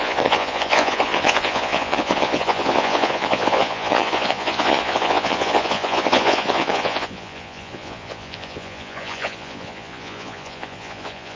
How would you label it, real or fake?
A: fake